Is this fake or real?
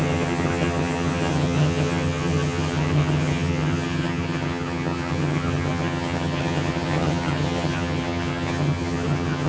fake